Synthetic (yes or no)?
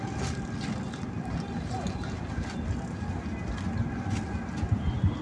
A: no